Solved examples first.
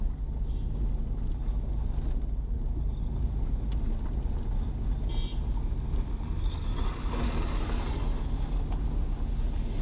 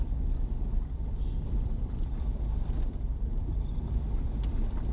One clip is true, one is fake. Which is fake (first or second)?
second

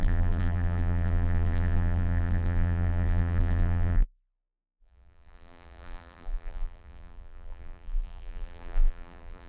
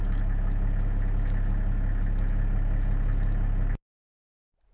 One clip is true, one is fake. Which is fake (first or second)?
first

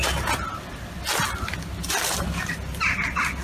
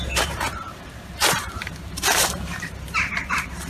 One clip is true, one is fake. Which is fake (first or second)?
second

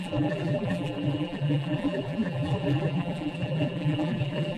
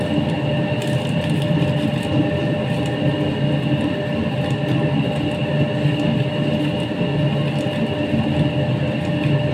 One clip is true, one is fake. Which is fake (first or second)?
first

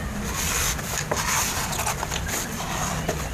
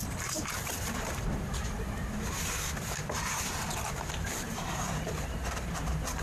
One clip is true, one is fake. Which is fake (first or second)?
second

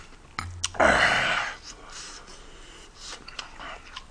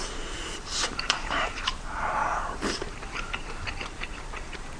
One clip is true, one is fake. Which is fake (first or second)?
second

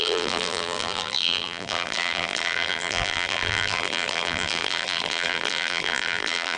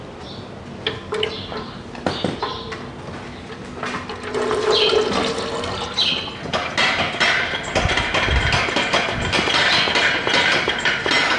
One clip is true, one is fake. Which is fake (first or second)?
first